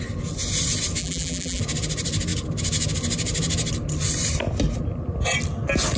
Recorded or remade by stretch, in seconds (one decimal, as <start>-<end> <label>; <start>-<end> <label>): 0.0-1.0 recorded; 1.0-1.6 remade; 1.6-6.0 recorded